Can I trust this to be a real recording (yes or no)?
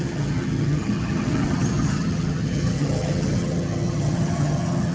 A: no